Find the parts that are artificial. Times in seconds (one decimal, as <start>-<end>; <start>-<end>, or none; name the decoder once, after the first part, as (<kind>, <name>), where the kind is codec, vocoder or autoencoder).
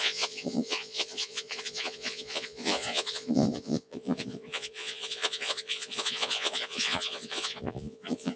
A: 0.0-8.4 (vocoder, Vocos)